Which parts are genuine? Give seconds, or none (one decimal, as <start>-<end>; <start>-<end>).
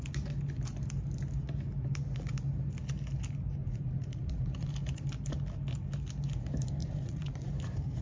0.0-3.6; 4.7-6.8; 7.5-8.0